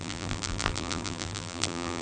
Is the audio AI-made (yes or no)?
yes